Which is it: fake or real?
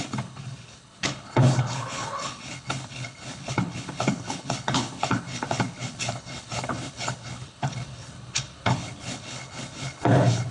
fake